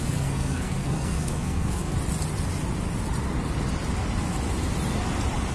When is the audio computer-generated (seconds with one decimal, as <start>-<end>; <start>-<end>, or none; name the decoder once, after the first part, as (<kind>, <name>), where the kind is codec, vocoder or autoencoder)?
0.0-1.9 (codec, SNAC)